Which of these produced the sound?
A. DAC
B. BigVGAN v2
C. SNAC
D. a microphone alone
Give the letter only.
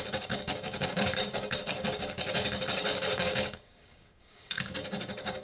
A